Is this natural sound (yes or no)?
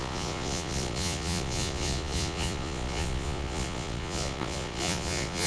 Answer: no